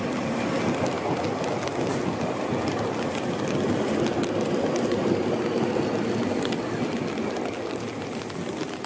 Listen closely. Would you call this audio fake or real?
real